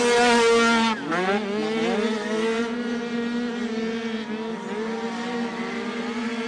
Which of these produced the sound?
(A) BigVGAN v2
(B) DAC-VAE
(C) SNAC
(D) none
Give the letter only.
D